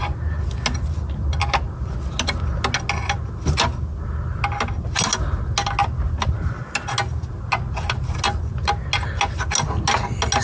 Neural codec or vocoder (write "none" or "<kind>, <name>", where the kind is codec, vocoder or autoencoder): none